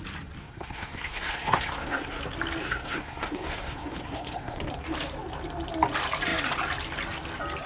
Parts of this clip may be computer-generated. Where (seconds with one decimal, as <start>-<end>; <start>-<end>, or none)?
0.4-2.2; 2.6-4.7